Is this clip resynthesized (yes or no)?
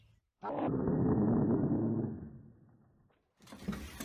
no